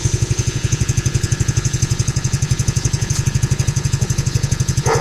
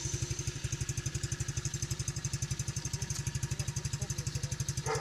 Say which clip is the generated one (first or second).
first